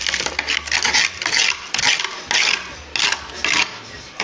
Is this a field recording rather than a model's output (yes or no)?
yes